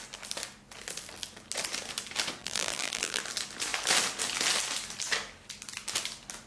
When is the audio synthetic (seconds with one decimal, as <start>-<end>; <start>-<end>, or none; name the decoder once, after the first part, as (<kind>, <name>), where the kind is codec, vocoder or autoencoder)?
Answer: 2.4-3.2 (vocoder, BigVGAN v2)